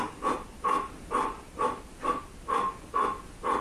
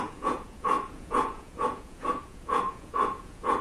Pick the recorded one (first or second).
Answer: first